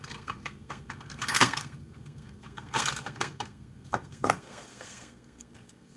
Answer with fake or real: fake